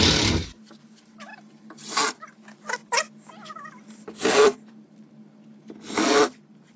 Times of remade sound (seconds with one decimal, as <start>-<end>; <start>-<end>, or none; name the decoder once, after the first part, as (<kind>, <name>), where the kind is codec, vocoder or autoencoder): none